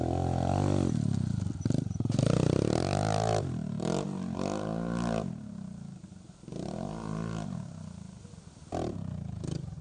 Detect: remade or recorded recorded